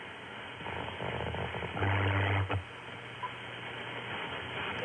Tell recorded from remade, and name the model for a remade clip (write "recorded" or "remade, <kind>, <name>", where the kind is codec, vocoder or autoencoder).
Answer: recorded